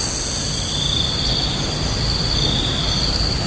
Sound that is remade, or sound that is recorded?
recorded